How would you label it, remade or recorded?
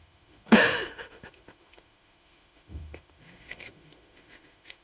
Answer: remade